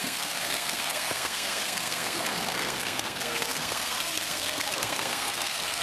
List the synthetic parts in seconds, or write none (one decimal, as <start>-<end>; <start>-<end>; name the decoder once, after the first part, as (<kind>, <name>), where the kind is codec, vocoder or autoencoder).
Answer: 0.0-5.8 (codec, SNAC)